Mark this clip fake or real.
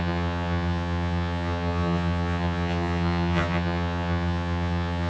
fake